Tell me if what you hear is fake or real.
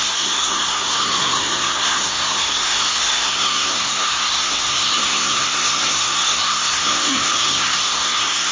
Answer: fake